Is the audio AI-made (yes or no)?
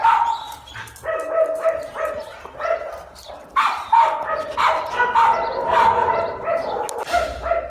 no